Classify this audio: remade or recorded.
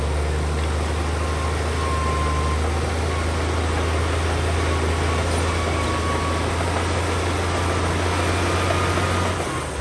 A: recorded